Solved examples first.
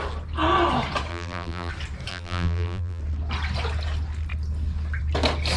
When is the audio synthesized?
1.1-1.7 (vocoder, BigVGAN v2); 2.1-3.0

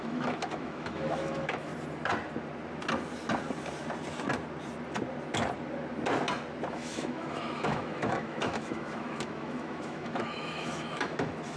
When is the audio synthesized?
0.0-1.7 (autoencoder, DAC-VAE); 6.7-11.6

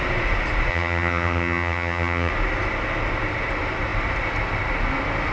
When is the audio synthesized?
0.7-2.3 (vocoder, HiFi-GAN)